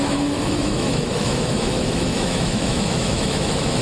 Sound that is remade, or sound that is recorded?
remade